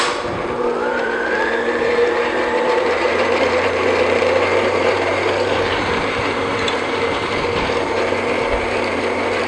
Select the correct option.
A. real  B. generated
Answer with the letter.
B